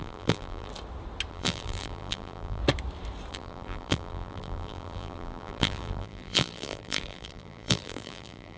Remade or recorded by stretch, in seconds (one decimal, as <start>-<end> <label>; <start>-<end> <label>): 0.0-0.7 remade; 0.7-1.3 recorded; 1.3-2.6 remade; 2.6-3.3 recorded; 3.3-8.6 remade